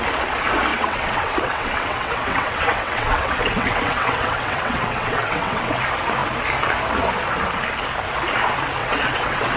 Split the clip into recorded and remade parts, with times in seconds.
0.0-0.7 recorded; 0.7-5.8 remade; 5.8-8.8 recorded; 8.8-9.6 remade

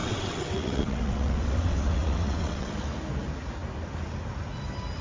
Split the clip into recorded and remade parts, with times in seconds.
0.0-2.7 remade; 2.7-5.0 recorded

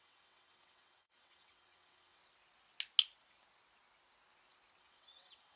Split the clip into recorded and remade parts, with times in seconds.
0.0-2.2 remade; 2.2-4.8 recorded; 4.8-5.6 remade

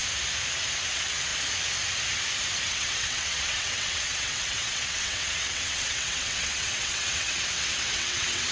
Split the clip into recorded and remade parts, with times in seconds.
0.0-0.9 recorded; 0.9-1.3 remade; 1.3-2.7 recorded; 2.7-8.5 remade

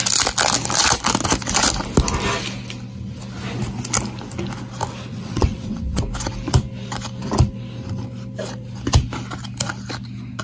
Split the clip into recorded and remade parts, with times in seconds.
0.0-5.1 recorded; 5.1-6.0 remade; 6.0-10.4 recorded

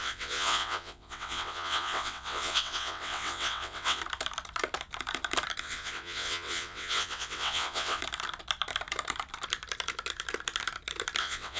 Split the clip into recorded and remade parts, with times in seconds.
0.0-4.0 remade; 4.0-5.6 recorded; 5.6-8.0 remade; 8.0-11.2 recorded; 11.2-11.6 remade